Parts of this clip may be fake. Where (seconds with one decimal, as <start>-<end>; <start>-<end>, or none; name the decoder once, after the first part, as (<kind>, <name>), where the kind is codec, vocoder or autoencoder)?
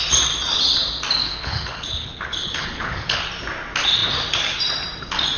1.2-3.2 (codec, HILCodec)